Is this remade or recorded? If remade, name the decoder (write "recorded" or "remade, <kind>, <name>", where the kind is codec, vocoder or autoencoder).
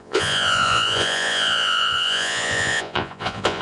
remade, vocoder, Vocos